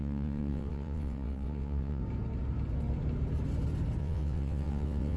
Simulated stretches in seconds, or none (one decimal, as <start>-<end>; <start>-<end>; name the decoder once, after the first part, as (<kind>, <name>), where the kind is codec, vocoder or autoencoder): 0.0-2.0 (vocoder, WaveNeXt); 4.0-5.2